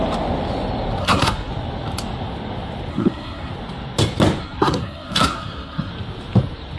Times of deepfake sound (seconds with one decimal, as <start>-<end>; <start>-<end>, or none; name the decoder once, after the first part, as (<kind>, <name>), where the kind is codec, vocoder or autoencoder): 1.0-1.5 (codec, SNAC); 2.9-3.5; 4.4-5.9